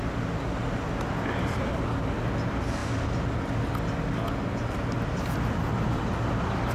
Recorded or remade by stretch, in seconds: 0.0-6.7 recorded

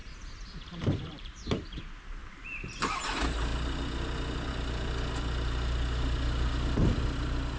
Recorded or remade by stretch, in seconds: 0.0-1.8 remade; 1.8-2.2 recorded; 2.2-2.8 remade; 2.8-7.6 recorded

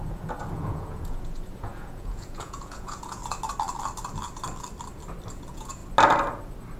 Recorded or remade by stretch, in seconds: 0.0-3.2 remade; 3.2-5.3 recorded; 5.3-5.8 remade; 5.8-6.8 recorded

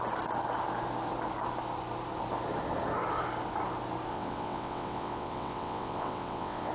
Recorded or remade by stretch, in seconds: 0.0-4.1 recorded; 4.1-6.7 remade